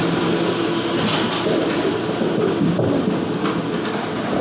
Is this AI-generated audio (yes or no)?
no